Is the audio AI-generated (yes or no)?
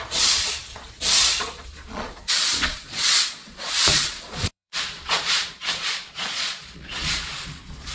yes